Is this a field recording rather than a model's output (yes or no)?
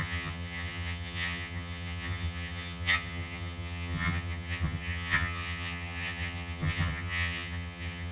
no